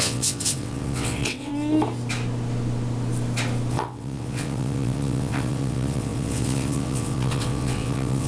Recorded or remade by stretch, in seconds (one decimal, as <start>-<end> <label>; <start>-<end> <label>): 0.0-1.5 remade; 1.5-3.7 recorded; 3.7-8.3 remade